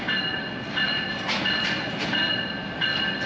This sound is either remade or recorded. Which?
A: recorded